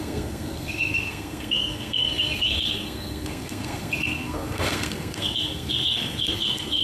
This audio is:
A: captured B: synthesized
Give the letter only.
B